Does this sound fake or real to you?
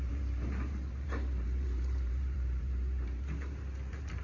fake